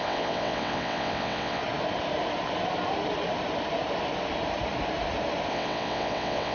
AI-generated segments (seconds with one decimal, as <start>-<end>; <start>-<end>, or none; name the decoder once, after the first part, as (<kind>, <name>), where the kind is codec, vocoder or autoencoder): 0.0-1.6 (vocoder, WaveNeXt); 5.5-6.5